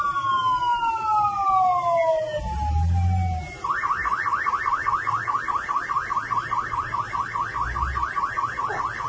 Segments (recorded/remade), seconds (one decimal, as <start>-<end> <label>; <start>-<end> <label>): 0.0-9.1 recorded